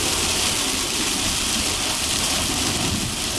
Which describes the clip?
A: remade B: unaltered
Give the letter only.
B